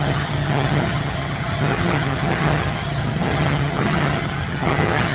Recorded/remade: remade